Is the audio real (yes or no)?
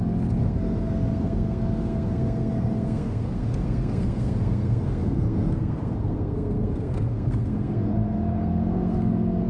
no